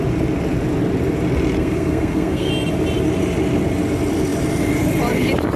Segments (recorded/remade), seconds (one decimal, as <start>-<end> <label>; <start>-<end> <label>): 0.0-1.6 recorded; 1.6-2.5 remade; 2.5-5.6 recorded